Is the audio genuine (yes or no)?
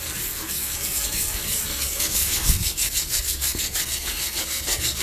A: no